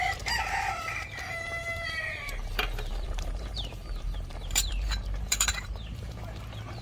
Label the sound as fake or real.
fake